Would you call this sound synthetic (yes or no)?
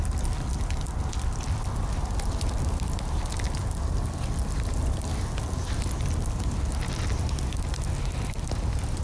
no